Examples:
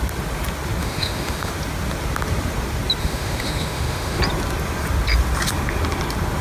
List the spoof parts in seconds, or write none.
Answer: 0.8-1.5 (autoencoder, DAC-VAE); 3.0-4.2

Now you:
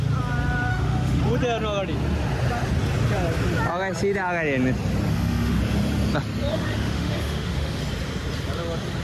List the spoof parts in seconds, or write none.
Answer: 0.7-1.2 (autoencoder, DAC-VAE); 5.1-5.6; 6.5-7.8